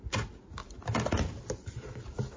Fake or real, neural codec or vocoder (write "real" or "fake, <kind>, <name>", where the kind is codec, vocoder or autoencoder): real